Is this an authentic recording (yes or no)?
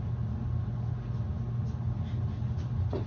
yes